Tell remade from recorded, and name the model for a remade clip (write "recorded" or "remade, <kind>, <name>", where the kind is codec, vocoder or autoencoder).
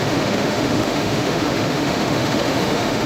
remade, autoencoder, DAC-VAE